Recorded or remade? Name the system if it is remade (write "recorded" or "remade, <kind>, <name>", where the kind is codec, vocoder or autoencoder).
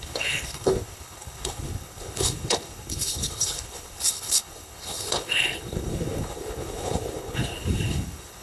remade, codec, HILCodec